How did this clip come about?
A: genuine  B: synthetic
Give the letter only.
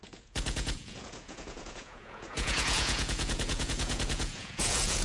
B